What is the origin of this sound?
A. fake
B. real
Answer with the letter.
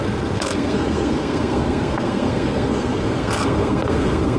A